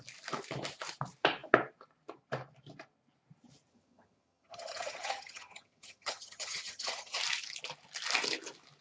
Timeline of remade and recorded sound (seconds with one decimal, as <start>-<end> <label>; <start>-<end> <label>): 0.0-3.7 recorded; 3.7-7.2 remade; 7.2-8.8 recorded